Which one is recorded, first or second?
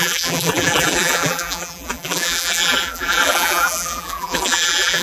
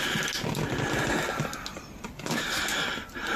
second